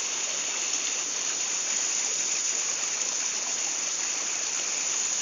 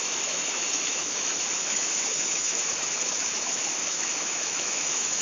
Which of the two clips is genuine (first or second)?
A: first